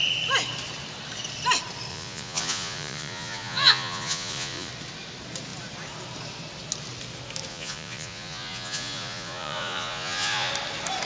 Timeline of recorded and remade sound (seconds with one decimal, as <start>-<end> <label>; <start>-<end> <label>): 0.0-1.9 recorded; 1.9-4.7 remade; 4.7-7.5 recorded; 7.5-10.5 remade; 10.5-11.0 recorded